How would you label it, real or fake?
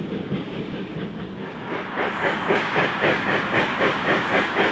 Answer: fake